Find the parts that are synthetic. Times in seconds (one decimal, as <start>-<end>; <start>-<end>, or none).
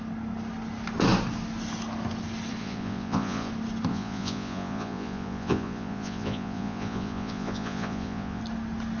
2.6-3.5; 3.9-8.4